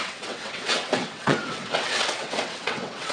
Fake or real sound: fake